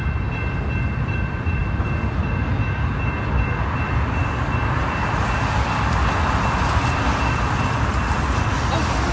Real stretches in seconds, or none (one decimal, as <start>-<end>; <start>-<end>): 0.0-9.1